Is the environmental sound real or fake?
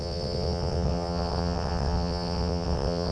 fake